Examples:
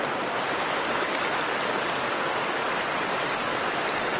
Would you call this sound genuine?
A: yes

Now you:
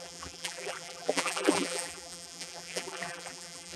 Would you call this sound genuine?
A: no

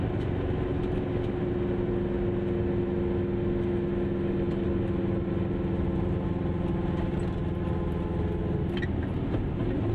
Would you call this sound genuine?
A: yes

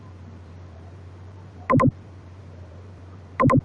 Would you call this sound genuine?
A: no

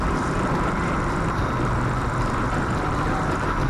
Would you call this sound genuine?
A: no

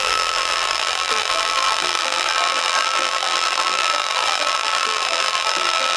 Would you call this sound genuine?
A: no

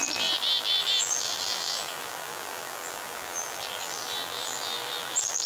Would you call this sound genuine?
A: no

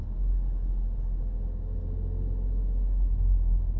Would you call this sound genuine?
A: yes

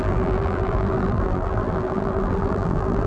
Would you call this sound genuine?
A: no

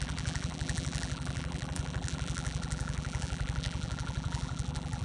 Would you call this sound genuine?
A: no